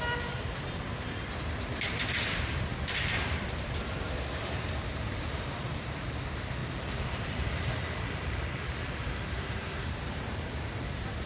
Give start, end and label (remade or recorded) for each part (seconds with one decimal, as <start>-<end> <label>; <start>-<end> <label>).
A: 0.0-11.3 remade